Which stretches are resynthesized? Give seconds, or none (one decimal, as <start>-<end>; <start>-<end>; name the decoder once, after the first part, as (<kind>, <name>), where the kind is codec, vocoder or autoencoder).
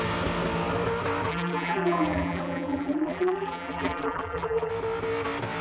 1.3-4.7 (vocoder, BigVGAN v2)